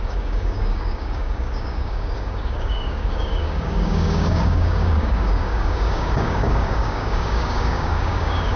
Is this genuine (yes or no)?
no